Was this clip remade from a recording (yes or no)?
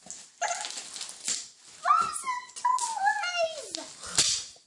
no